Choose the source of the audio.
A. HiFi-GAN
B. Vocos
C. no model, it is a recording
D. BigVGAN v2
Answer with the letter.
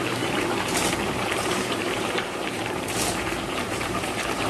D